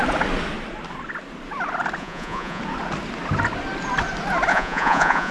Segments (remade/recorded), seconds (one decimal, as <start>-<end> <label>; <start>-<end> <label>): 0.0-2.0 recorded; 2.0-2.6 remade; 2.6-4.5 recorded; 4.5-5.3 remade